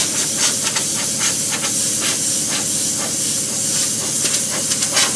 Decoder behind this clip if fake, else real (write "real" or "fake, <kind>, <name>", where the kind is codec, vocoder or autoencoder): real